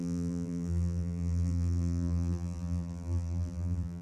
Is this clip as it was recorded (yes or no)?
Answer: no